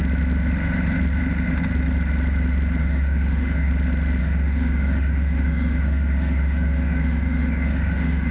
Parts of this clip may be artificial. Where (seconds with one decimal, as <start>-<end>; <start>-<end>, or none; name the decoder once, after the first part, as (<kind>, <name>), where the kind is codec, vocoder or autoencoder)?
2.8-3.7 (autoencoder, DAC-VAE); 4.2-8.3

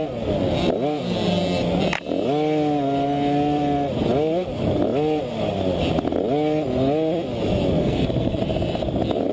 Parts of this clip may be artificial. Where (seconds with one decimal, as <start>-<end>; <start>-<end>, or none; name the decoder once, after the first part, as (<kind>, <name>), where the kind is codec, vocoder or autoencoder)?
7.8-8.4 (codec, SNAC)